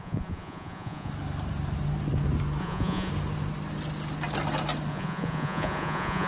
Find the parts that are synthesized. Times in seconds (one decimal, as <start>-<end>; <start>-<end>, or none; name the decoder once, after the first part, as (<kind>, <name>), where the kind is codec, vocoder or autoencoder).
0.0-1.1 (vocoder, Vocos); 2.6-3.1; 4.9-6.3